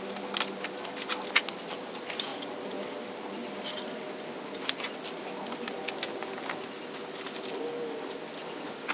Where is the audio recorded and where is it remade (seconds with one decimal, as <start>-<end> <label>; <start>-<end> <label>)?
0.0-8.9 recorded